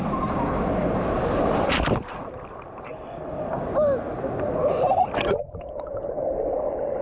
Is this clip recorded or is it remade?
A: recorded